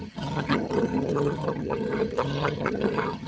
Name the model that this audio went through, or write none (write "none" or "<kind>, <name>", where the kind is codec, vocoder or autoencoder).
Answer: vocoder, HiFi-GAN